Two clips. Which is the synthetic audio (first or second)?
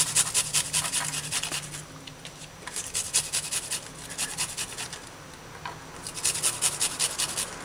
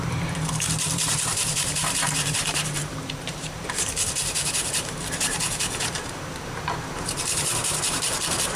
second